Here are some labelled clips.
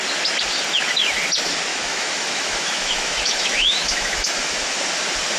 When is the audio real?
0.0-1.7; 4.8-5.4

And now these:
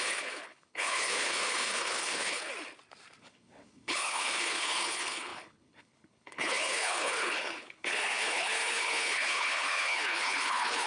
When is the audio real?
2.5-3.2

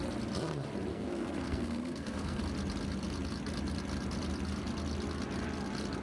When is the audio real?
0.0-0.9; 2.4-6.0

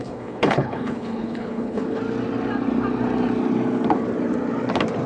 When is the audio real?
2.0-5.1

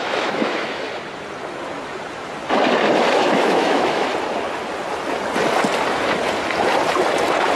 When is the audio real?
0.9-3.1; 4.1-7.6

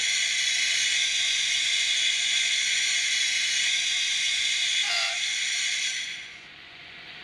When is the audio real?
0.0-0.9; 5.2-5.9

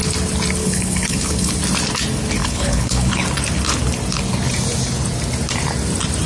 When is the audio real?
0.0-0.6; 1.5-2.4; 3.2-6.3